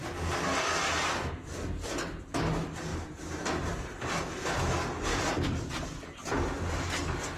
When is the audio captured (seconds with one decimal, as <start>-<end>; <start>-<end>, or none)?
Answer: 0.0-2.9; 4.6-5.1; 5.7-7.4